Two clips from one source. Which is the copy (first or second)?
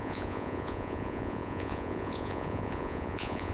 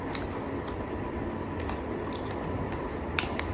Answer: first